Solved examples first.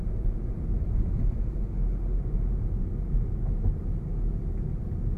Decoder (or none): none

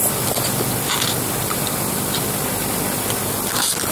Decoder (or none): none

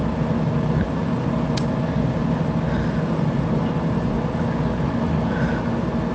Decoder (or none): none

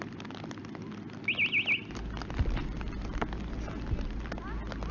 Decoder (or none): none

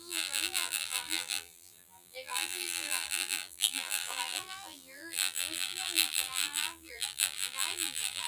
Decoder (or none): vocoder, BigVGAN v2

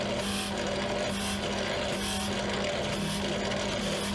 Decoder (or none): none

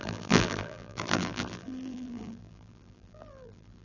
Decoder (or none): vocoder, BigVGAN v2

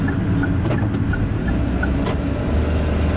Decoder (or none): none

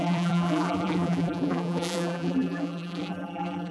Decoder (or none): vocoder, BigVGAN v2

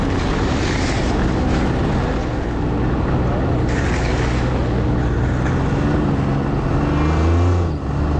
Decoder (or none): none